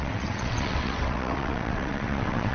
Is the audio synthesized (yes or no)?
yes